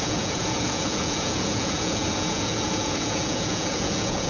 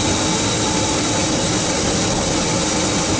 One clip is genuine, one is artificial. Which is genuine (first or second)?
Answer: second